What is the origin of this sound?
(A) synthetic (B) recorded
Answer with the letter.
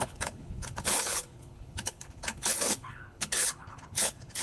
A